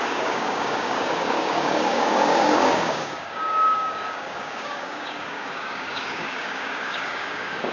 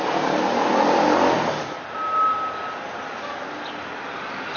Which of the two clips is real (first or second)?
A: second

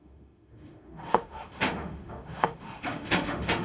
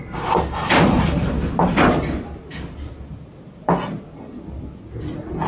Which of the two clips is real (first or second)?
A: second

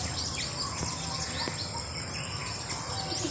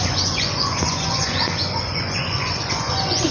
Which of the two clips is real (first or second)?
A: first